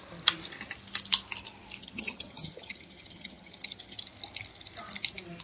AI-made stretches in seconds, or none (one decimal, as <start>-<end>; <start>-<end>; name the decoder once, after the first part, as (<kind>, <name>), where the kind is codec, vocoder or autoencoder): 1.8-4.0 (vocoder, HiFi-GAN)